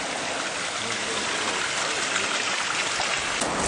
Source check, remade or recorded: recorded